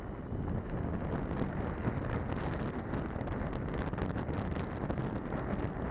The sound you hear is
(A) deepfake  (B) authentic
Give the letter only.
B